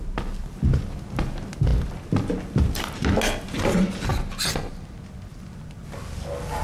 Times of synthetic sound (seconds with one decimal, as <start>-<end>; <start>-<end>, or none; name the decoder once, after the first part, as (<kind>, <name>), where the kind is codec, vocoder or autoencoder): none